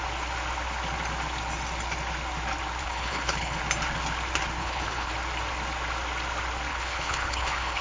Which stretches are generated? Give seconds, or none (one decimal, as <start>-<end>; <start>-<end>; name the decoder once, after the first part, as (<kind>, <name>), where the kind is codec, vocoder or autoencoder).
2.8-3.6 (codec, HILCodec); 4.6-5.1; 6.7-7.8